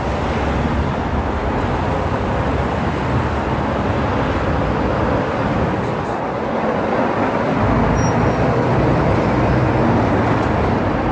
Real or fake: real